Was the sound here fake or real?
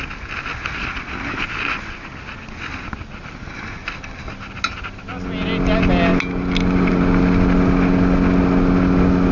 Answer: real